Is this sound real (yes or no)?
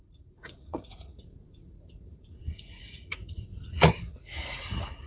no